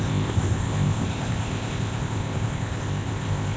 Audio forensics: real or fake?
fake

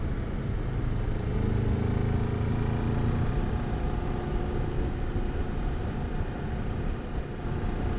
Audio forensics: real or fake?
real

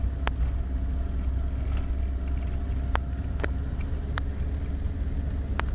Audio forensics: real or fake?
real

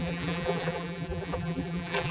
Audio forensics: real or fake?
fake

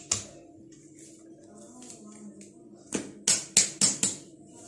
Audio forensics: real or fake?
real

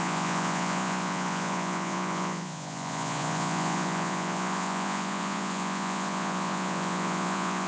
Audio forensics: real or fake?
fake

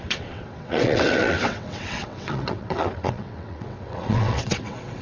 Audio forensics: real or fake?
fake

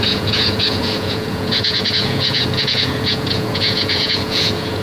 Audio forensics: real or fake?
fake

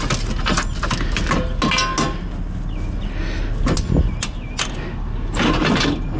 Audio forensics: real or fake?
real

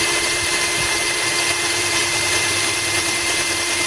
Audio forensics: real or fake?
fake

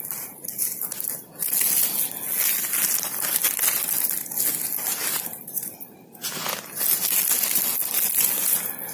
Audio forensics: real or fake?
real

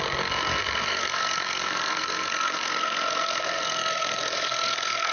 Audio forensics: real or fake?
fake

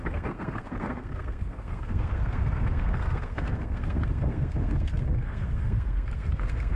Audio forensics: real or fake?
fake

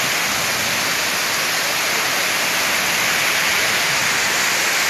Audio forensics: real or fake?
real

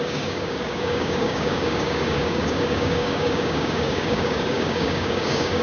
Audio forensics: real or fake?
fake